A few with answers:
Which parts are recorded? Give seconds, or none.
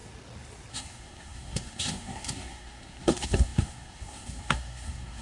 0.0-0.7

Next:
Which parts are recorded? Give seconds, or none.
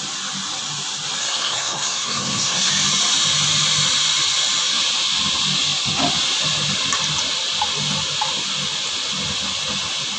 0.0-1.2; 2.7-10.2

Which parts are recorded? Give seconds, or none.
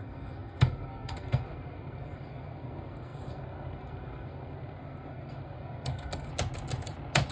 6.3-7.3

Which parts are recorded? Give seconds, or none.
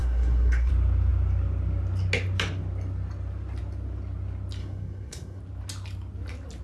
0.7-4.6; 5.4-6.6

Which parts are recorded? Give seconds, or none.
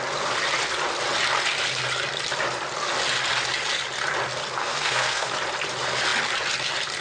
0.0-4.6; 5.3-7.0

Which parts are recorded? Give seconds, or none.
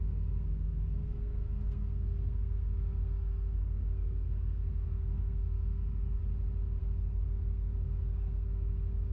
6.2-6.8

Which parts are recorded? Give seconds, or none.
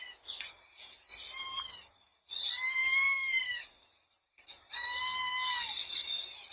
0.0-3.1; 3.6-6.5